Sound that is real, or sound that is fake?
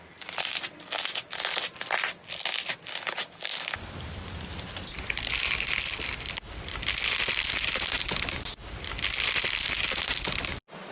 real